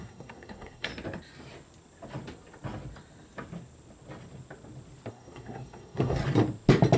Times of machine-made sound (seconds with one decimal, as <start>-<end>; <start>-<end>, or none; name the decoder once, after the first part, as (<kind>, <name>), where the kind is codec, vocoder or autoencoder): 0.0-0.9 (codec, SNAC); 5.1-6.2